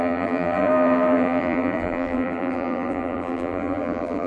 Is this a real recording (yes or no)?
no